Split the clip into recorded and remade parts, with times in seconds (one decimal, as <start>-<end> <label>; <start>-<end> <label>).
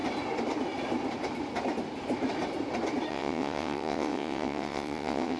0.0-3.1 recorded; 3.1-5.4 remade